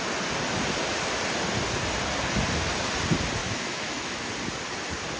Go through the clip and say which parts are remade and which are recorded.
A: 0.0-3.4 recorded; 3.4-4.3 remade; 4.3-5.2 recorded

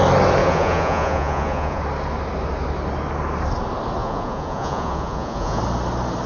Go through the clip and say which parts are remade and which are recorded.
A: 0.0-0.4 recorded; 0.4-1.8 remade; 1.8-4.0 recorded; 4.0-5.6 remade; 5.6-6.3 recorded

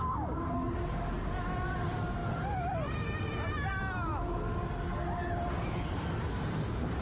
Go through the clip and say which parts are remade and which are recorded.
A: 0.0-7.0 recorded

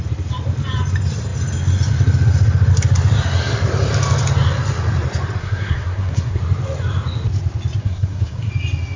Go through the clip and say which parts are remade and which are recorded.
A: 0.0-5.4 recorded; 5.4-6.4 remade; 6.4-7.8 recorded; 7.8-8.5 remade; 8.5-9.0 recorded